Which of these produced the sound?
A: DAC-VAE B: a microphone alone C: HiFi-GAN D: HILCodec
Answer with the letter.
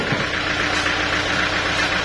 B